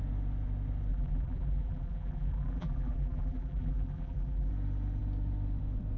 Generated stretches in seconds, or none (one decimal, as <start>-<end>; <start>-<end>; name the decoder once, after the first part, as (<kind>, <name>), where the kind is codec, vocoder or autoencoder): 0.9-4.5 (vocoder, BigVGAN v2)